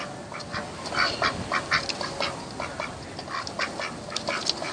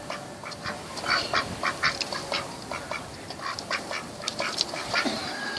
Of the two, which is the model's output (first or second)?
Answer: second